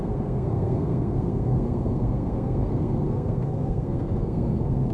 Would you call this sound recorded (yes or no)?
no